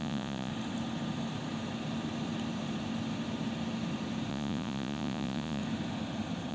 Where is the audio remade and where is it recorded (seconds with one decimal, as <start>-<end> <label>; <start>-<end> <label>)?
0.0-0.5 remade; 0.5-4.3 recorded; 4.3-5.6 remade; 5.6-6.5 recorded